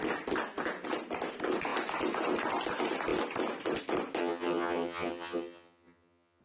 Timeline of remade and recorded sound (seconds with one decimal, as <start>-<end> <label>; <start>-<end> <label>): 0.0-4.2 recorded; 4.2-6.4 remade